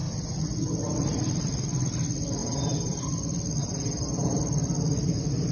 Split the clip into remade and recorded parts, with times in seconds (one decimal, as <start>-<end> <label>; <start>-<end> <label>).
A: 0.0-2.4 recorded; 2.4-3.1 remade; 3.1-3.6 recorded; 3.6-4.4 remade; 4.4-5.5 recorded